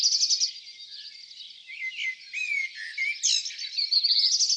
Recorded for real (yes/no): yes